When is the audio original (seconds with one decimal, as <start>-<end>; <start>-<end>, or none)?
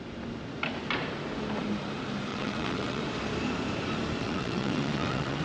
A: 0.0-2.3; 3.0-4.2